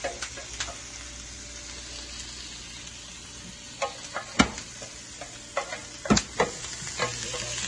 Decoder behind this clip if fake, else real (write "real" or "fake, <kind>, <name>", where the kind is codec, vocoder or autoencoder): real